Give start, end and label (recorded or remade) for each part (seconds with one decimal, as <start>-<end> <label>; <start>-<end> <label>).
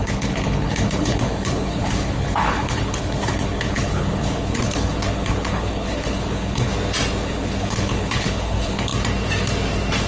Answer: 0.0-6.7 remade; 6.7-7.2 recorded; 7.2-8.9 remade; 8.9-10.1 recorded